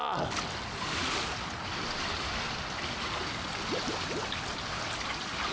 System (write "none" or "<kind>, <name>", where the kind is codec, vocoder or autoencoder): none